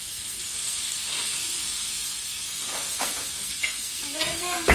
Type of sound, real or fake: fake